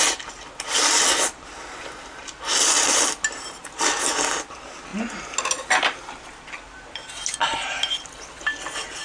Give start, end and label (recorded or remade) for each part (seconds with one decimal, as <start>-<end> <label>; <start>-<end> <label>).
0.0-9.0 recorded